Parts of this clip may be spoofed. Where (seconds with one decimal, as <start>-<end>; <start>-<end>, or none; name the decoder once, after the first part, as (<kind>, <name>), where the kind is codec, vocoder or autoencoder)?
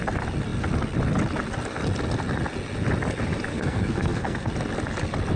3.5-4.5 (codec, SNAC)